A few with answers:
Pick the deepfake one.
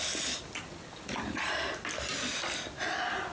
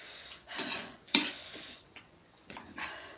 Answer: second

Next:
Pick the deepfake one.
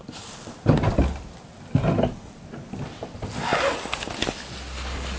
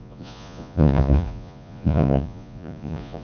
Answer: second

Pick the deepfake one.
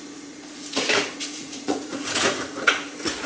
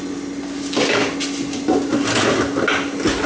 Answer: first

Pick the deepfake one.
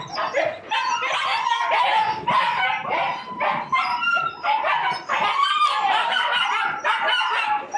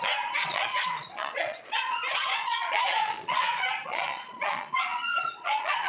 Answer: second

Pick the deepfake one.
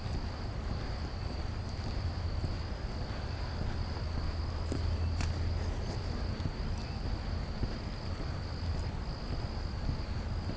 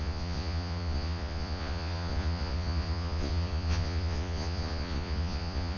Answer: second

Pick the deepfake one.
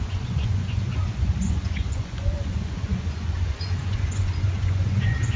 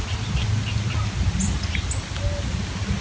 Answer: first